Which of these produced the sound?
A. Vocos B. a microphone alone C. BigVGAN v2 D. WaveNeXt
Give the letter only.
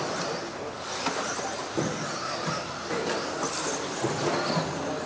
B